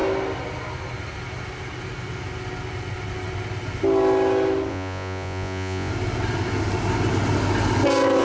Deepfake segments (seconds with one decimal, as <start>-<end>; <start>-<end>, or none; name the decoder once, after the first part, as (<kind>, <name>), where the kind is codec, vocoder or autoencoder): 4.7-5.9 (vocoder, Vocos)